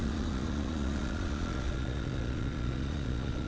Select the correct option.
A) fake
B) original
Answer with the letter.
A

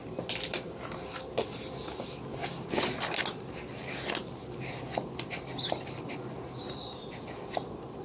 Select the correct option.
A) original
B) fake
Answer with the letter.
A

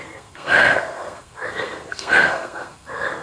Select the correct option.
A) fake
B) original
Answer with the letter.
A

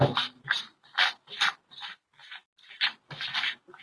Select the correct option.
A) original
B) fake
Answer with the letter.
A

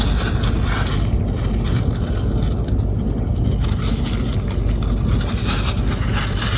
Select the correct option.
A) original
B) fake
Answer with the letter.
A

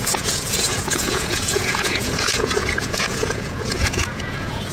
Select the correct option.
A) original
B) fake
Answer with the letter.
B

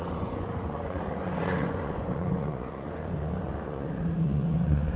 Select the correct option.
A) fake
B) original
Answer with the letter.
A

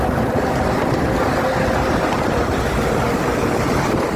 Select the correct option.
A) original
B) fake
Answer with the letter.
A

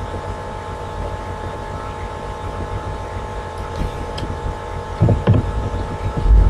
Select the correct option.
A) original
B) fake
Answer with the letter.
B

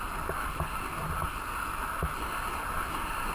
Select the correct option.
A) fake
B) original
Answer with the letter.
B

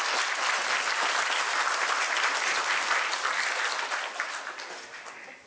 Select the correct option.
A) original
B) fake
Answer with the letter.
A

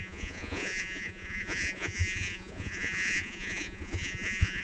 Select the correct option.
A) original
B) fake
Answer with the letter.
B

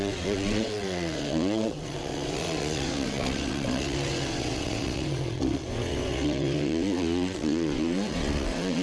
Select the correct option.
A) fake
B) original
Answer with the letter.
A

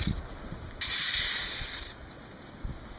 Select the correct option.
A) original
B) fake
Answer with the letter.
A